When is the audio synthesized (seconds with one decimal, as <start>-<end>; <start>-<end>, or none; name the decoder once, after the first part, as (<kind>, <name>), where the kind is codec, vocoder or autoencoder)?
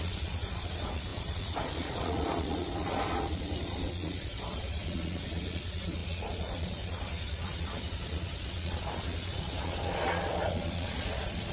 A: 0.0-11.5 (vocoder, Vocos)